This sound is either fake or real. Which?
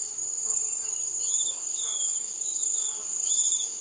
fake